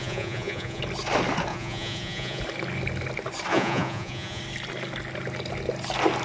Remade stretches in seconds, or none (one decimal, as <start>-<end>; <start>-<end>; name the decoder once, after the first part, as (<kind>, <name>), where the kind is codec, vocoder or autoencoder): 0.0-0.8 (vocoder, Vocos); 1.5-2.4; 3.5-4.4